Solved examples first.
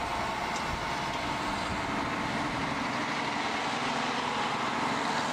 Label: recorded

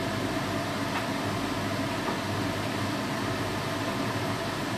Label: recorded